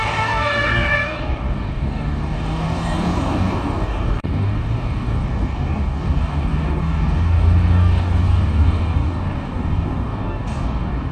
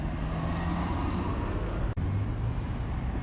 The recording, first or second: second